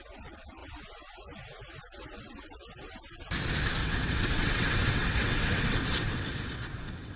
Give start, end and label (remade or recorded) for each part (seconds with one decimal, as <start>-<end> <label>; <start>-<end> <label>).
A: 0.0-3.8 recorded; 3.8-7.2 remade